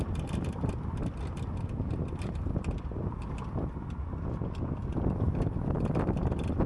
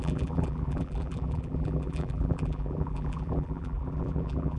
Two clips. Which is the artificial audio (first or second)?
second